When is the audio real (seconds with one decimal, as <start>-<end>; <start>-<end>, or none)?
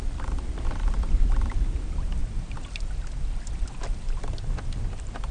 0.0-5.3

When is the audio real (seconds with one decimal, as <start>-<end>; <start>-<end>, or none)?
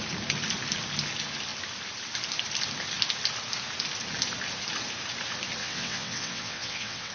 0.0-5.6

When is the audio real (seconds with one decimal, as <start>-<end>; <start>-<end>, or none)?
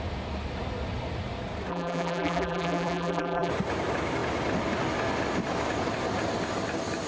0.0-1.7; 3.5-7.1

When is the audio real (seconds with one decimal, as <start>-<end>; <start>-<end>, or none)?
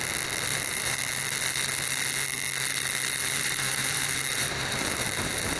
0.0-0.5; 1.0-3.2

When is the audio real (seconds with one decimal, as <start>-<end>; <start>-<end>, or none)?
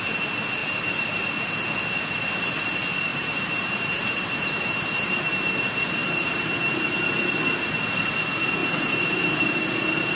0.0-3.1; 7.1-8.6; 9.4-10.2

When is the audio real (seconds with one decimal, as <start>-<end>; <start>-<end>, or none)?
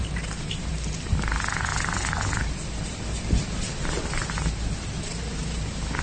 0.0-6.0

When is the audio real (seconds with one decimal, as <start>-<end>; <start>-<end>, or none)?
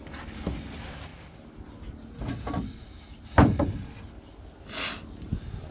0.0-5.7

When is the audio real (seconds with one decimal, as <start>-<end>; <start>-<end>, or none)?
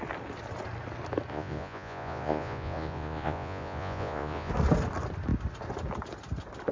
0.0-1.3; 4.5-6.7